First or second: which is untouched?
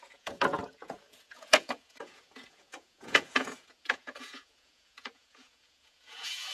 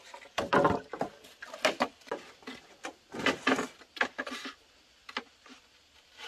second